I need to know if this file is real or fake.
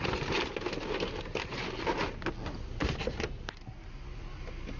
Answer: real